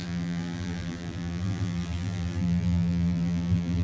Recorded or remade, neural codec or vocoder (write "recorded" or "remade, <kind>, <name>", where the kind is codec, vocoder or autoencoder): remade, vocoder, BigVGAN v2